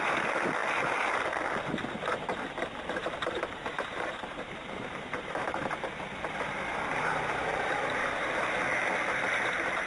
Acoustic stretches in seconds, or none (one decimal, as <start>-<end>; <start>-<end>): 0.0-3.0; 5.7-6.7; 8.3-9.9